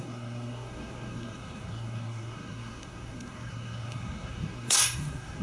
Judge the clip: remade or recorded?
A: remade